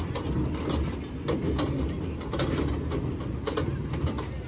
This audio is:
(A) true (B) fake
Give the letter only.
A